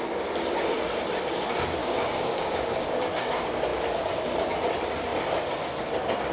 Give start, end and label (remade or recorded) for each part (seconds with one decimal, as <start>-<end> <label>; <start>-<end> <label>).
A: 0.0-1.8 recorded; 1.8-3.3 remade; 3.3-6.3 recorded